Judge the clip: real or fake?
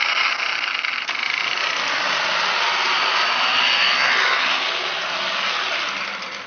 real